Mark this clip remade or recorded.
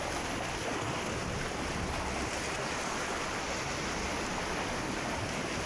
recorded